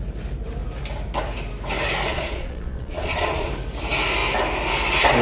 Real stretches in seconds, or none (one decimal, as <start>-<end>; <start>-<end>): 0.0-2.1; 3.5-5.2